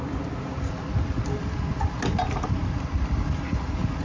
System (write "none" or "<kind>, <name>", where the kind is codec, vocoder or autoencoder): none